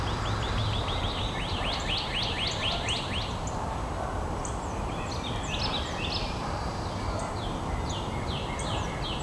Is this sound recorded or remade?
recorded